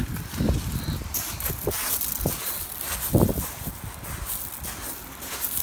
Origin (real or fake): real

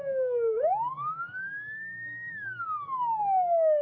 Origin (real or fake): fake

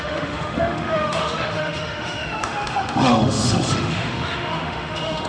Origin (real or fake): fake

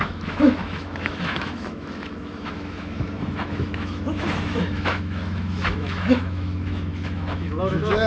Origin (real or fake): fake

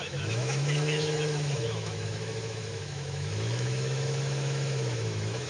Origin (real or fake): fake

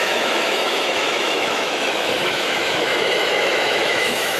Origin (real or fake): fake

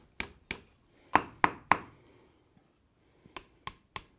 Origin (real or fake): real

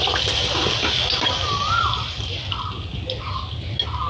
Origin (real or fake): real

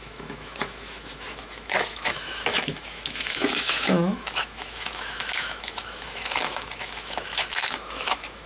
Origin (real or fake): fake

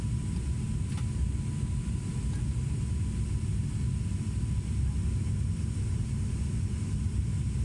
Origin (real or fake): real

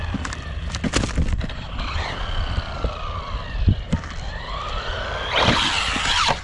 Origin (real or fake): real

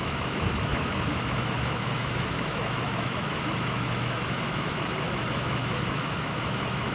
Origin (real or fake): fake